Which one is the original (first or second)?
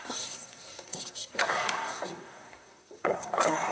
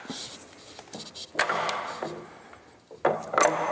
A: second